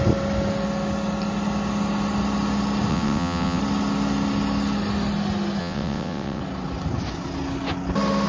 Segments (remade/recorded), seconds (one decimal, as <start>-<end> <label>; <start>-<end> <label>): 0.0-2.9 recorded; 2.9-3.6 remade; 3.6-5.6 recorded; 5.6-6.4 remade; 6.4-8.3 recorded

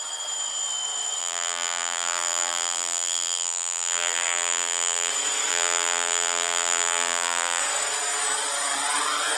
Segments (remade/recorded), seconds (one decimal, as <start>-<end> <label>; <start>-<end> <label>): 0.0-1.2 recorded; 1.2-5.1 remade; 5.1-5.5 recorded; 5.5-7.6 remade; 7.6-9.4 recorded

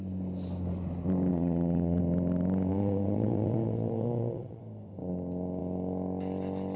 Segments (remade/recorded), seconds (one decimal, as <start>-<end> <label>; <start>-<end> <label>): 0.0-1.3 recorded; 1.3-2.0 remade; 2.0-2.7 recorded; 2.7-4.6 remade; 4.6-6.8 recorded

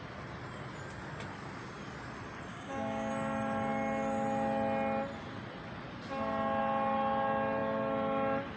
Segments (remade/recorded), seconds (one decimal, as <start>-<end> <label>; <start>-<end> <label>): 0.0-2.5 recorded; 2.5-3.1 remade; 3.1-8.6 recorded

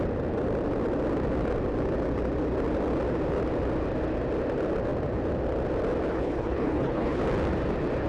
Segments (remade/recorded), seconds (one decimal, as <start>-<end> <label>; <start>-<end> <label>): 0.0-6.1 recorded; 6.1-7.2 remade; 7.2-8.1 recorded